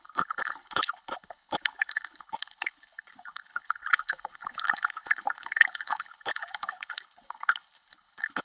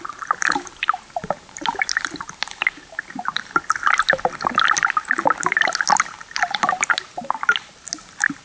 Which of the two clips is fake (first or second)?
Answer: first